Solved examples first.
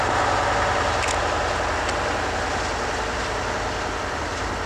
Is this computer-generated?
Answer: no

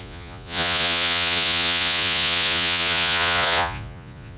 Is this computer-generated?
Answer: yes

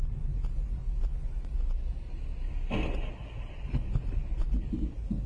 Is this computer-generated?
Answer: no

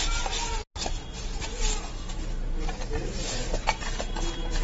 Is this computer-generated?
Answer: no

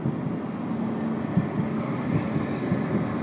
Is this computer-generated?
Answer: no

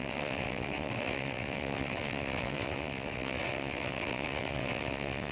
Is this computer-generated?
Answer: yes